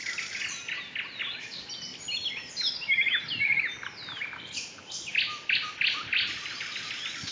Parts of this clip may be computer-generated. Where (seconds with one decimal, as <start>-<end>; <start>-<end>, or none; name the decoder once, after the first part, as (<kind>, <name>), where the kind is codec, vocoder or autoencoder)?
none